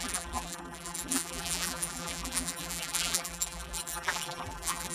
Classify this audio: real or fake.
fake